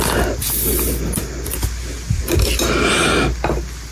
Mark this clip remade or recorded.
recorded